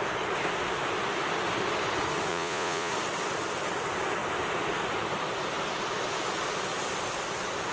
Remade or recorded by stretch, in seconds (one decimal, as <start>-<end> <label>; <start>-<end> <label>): 0.0-2.3 recorded; 2.3-2.9 remade; 2.9-7.7 recorded